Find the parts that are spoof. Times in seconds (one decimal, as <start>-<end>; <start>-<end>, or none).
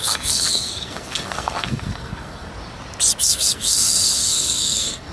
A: 0.0-2.5; 3.2-5.1